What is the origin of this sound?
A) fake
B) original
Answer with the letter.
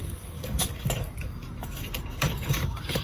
A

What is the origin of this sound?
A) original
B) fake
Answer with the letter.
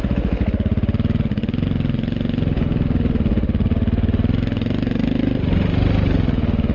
A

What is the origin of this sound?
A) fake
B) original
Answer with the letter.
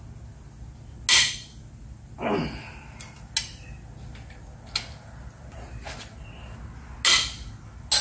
B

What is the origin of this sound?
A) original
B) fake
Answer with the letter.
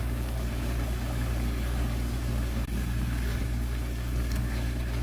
B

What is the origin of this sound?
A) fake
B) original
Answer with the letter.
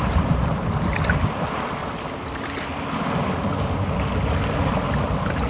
B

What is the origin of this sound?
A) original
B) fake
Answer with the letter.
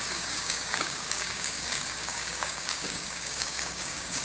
B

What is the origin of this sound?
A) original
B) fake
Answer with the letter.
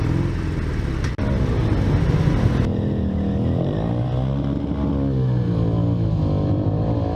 A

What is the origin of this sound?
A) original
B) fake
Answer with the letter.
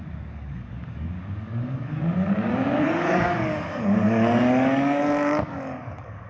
B